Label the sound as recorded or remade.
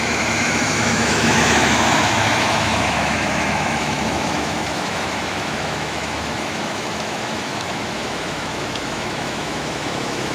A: remade